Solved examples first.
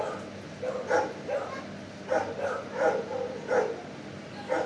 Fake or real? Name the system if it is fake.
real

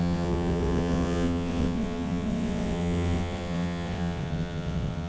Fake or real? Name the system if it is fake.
fake, vocoder, WaveNeXt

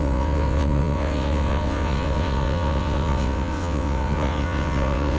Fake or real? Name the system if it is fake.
fake, vocoder, WaveNeXt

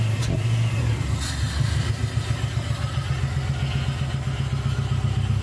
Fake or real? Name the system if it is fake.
real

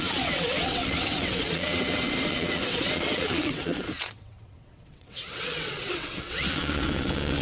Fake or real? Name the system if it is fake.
fake, vocoder, WaveNeXt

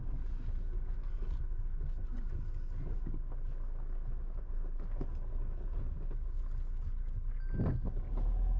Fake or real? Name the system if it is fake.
real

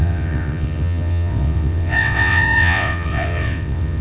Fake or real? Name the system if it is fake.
fake, vocoder, WaveNeXt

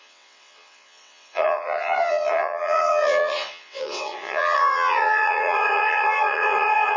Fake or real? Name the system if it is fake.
fake, vocoder, WaveNeXt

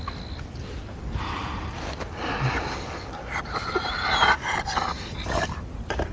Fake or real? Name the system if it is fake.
real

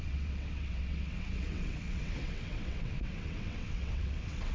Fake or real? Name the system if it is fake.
fake, vocoder, WaveNeXt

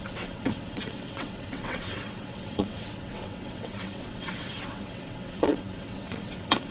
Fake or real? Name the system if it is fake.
fake, vocoder, WaveNeXt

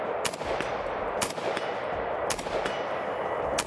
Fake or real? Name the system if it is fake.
real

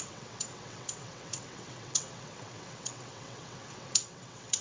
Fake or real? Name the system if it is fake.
fake, vocoder, WaveNeXt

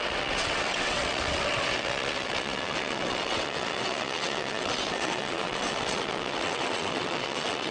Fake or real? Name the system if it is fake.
fake, vocoder, WaveNeXt